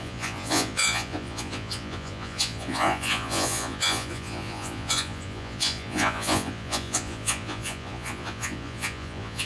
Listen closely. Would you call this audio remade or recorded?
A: remade